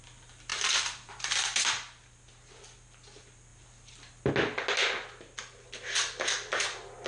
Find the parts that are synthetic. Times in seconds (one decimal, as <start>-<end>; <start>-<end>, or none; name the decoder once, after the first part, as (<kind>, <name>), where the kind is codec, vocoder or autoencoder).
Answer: 0.5-1.1 (vocoder, BigVGAN v2)